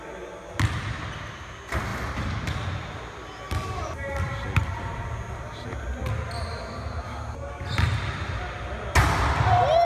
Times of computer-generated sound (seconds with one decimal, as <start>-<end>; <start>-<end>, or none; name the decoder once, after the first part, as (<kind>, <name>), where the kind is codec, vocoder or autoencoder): none